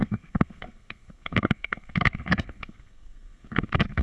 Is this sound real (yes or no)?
no